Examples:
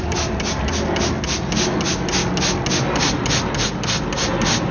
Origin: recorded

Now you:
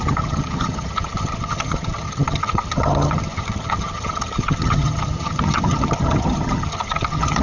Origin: remade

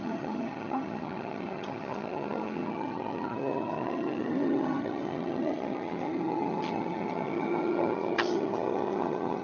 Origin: remade